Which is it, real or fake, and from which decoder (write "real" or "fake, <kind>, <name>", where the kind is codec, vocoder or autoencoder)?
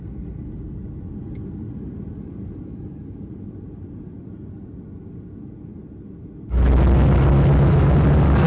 real